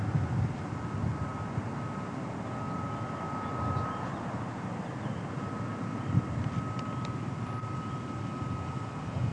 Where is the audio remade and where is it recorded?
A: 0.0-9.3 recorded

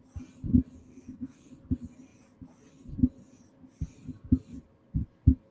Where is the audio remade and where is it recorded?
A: 0.0-0.8 recorded; 0.8-1.5 remade; 1.5-5.5 recorded

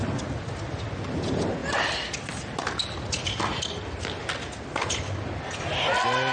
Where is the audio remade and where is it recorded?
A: 0.0-6.3 recorded

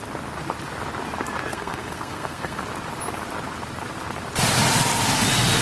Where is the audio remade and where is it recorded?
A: 0.0-1.5 recorded; 1.5-2.6 remade; 2.6-5.6 recorded

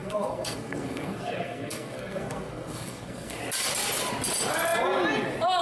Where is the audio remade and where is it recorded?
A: 0.0-3.4 remade; 3.4-5.6 recorded

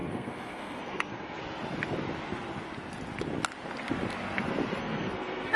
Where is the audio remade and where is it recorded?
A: 0.0-1.4 remade; 1.4-4.8 recorded; 4.8-5.6 remade

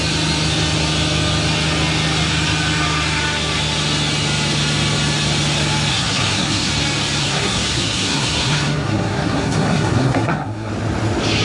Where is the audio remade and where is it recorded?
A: 0.0-5.9 recorded; 5.9-6.7 remade; 6.7-7.2 recorded; 7.2-10.7 remade; 10.7-11.4 recorded